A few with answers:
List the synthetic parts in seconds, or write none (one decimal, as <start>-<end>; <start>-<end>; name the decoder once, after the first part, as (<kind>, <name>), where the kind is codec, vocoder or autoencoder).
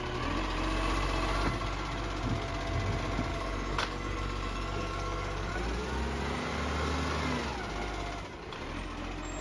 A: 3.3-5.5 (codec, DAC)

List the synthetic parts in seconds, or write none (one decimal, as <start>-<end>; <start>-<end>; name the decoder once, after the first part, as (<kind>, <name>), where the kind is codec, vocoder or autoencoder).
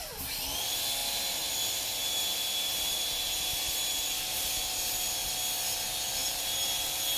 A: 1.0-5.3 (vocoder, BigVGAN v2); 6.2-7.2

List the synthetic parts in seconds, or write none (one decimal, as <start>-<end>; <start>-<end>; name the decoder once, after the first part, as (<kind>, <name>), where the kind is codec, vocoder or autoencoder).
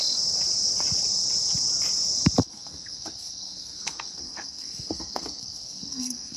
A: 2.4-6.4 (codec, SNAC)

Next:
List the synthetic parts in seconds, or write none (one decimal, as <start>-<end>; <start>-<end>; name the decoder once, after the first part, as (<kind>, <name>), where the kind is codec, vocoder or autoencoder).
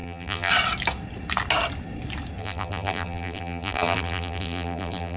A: 0.0-0.5 (vocoder, BigVGAN v2); 2.4-5.2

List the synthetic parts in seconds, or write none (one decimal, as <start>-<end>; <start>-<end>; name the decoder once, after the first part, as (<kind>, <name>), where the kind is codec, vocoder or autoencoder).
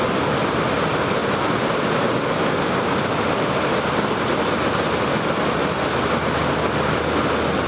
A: none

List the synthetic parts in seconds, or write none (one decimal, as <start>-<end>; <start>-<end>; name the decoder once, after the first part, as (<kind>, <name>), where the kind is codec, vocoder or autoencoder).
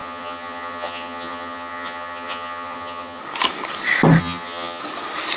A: 0.0-3.2 (vocoder, HiFi-GAN); 4.2-4.8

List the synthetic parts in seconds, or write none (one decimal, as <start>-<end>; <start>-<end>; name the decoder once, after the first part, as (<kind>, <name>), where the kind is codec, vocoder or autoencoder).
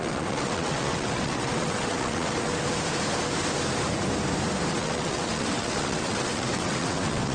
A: 0.0-2.5 (vocoder, WaveNeXt); 4.7-7.3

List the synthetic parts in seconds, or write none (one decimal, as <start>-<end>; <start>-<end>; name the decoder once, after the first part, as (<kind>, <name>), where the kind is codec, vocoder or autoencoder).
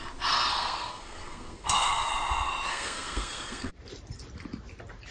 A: 0.5-2.1 (codec, SNAC); 2.7-3.7